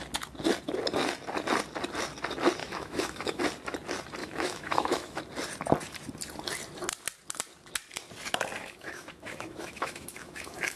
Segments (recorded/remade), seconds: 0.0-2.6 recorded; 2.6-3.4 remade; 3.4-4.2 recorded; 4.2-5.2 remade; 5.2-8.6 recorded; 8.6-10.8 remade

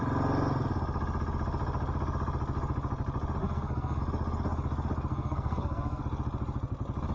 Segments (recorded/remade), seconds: 0.0-3.4 recorded; 3.4-4.0 remade; 4.0-5.1 recorded; 5.1-6.0 remade; 6.0-7.1 recorded

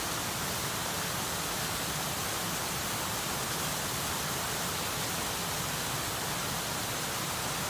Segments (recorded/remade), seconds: 0.0-7.7 recorded